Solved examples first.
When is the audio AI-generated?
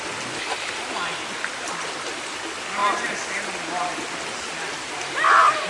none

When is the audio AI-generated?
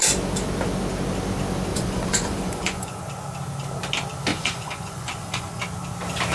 1.7-3.0 (vocoder, Vocos); 4.3-5.6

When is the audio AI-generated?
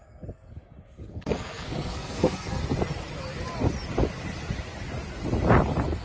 0.0-2.6 (codec, SNAC)